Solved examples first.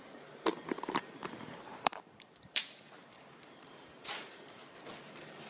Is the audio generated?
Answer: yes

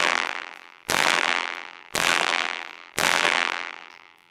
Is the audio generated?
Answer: yes